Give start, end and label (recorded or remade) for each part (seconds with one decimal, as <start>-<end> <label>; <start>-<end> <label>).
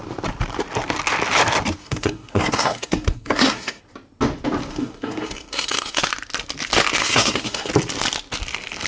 0.0-1.8 recorded; 1.8-3.8 remade; 3.8-4.7 recorded; 4.7-6.0 remade; 6.0-7.0 recorded; 7.0-7.7 remade; 7.7-8.9 recorded